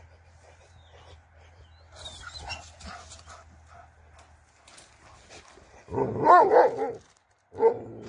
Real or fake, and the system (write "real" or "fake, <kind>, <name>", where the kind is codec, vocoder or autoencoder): real